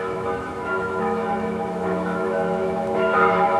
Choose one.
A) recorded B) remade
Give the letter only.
B